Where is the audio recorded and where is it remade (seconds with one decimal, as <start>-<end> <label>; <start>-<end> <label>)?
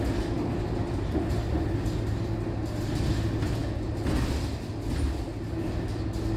0.0-6.4 recorded